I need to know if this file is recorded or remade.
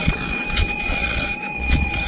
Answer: remade